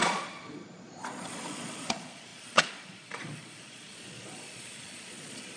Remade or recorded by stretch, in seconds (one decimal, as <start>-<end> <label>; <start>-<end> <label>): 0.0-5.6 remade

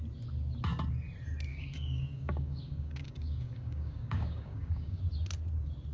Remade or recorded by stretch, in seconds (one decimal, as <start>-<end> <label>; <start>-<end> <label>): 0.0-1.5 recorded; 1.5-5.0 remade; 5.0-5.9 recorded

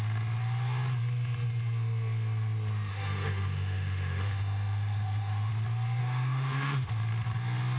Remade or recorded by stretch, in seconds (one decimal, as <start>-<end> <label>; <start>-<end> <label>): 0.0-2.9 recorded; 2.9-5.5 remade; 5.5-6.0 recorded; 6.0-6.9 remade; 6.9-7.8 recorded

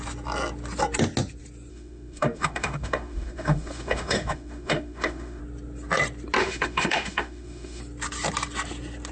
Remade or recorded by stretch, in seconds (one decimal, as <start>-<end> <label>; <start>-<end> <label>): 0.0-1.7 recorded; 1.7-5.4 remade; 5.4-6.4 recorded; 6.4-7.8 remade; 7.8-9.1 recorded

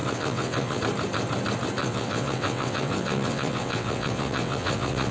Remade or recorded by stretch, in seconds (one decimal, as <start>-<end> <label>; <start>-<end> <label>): 0.0-0.8 remade; 0.8-1.8 recorded; 1.8-5.1 remade

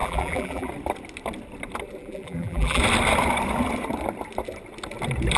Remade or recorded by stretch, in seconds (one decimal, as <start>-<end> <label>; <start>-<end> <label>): 0.0-0.7 remade; 0.7-2.0 recorded; 2.0-2.8 remade; 2.8-5.4 recorded